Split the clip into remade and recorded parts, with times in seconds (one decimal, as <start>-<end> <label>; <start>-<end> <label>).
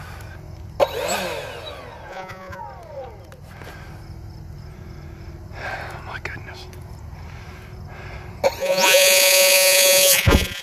0.0-2.1 recorded; 2.1-2.6 remade; 2.6-8.6 recorded; 8.6-10.6 remade